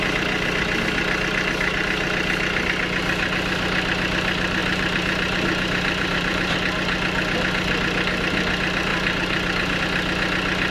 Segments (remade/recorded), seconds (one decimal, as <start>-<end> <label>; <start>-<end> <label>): 0.0-4.6 recorded; 4.6-6.5 remade; 6.5-8.9 recorded; 8.9-9.8 remade; 9.8-10.7 recorded